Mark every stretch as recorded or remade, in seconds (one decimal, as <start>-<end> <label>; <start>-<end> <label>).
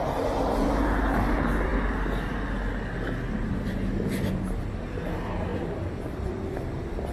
0.0-7.1 recorded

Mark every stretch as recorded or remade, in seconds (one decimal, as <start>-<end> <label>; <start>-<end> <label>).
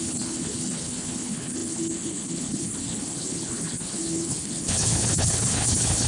0.0-6.1 remade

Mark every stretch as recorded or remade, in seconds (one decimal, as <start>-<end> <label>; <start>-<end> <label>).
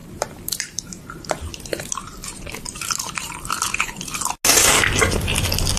0.0-1.6 remade; 1.6-2.2 recorded; 2.2-4.0 remade; 4.0-5.8 recorded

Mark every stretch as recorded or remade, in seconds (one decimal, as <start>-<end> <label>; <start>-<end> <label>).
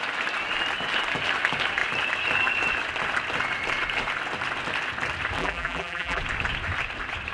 0.0-5.4 recorded; 5.4-6.2 remade; 6.2-7.3 recorded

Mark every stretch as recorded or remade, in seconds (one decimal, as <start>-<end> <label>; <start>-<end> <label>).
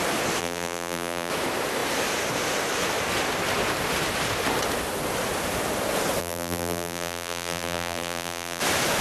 0.0-0.4 recorded; 0.4-1.3 remade; 1.3-6.2 recorded; 6.2-8.6 remade; 8.6-9.0 recorded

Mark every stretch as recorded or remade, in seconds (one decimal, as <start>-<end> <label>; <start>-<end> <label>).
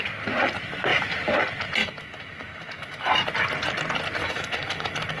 0.0-1.8 recorded; 1.8-3.1 remade; 3.1-4.2 recorded; 4.2-5.2 remade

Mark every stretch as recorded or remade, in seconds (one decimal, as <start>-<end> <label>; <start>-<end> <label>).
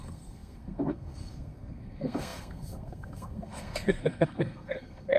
0.0-5.2 remade